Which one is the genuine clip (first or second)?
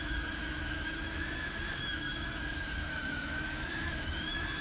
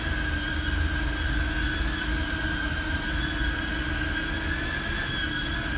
second